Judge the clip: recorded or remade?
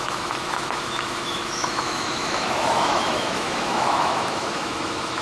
remade